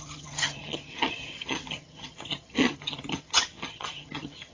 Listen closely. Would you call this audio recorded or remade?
remade